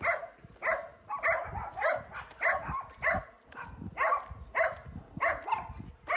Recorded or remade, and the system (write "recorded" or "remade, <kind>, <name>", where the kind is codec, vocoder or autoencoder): recorded